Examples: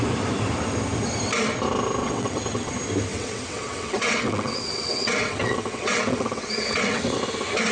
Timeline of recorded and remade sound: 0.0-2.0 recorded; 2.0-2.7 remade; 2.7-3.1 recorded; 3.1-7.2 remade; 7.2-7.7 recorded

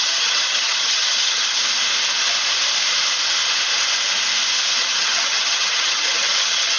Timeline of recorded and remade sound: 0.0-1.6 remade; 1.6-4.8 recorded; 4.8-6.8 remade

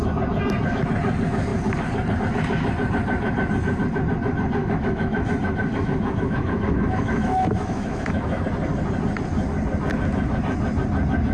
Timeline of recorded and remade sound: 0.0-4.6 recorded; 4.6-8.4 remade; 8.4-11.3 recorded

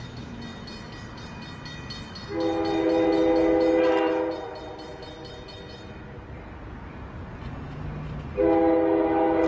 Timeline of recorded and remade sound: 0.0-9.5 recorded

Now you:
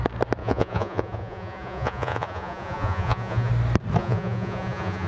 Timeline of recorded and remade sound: 0.0-0.4 recorded; 0.4-3.5 remade; 3.5-4.0 recorded; 4.0-5.1 remade